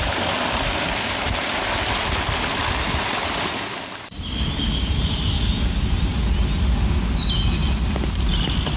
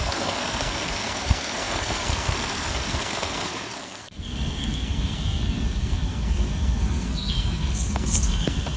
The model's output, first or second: second